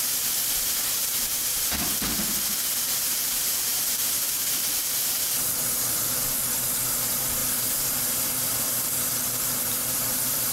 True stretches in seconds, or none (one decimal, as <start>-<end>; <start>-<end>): none

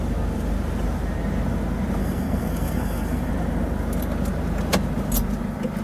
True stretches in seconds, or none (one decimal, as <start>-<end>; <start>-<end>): 0.0-2.0; 3.3-5.8

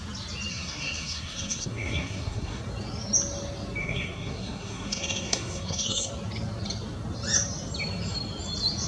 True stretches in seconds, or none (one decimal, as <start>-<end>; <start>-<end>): 0.0-0.5; 2.6-3.8; 6.1-8.9

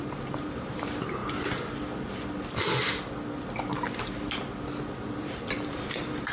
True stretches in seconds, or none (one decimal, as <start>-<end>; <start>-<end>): 1.2-5.0

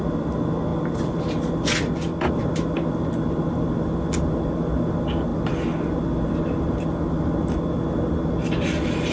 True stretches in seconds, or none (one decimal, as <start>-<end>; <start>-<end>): 0.0-9.1

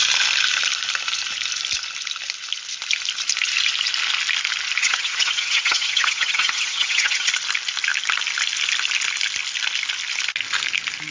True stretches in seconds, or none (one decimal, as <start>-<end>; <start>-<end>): 0.0-4.8; 7.3-11.1

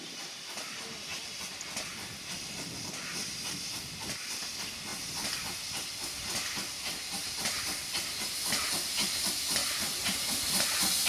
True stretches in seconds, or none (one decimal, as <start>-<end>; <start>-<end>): 0.0-9.6; 10.2-11.1

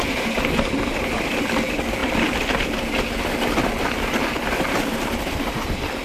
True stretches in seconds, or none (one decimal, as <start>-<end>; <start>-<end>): 0.0-6.0